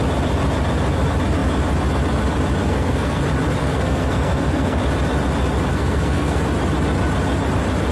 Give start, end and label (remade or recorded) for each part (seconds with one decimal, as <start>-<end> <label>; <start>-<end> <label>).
0.0-2.6 recorded; 2.6-3.2 remade; 3.2-3.6 recorded; 3.6-4.8 remade; 4.8-5.7 recorded; 5.7-6.4 remade; 6.4-7.9 recorded